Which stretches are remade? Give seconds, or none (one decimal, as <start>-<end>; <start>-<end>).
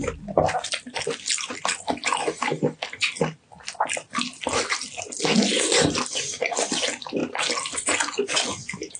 none